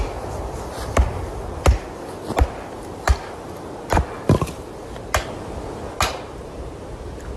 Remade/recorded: recorded